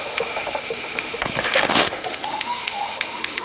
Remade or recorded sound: remade